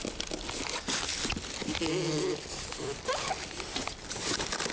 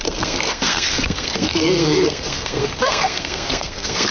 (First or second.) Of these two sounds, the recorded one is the first